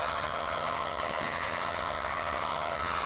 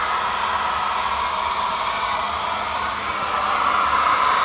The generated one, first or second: first